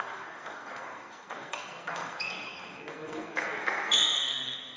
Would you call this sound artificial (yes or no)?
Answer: yes